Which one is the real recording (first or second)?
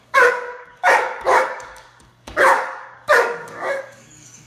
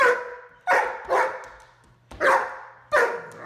second